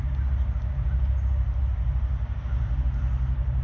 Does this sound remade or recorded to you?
recorded